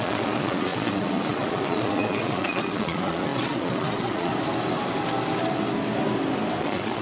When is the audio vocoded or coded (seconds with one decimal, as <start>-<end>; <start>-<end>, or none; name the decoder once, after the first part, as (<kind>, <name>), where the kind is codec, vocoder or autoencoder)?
0.0-4.3 (vocoder, Vocos); 6.6-7.0